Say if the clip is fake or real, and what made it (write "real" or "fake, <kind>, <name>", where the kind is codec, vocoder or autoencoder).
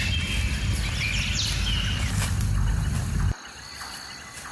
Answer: real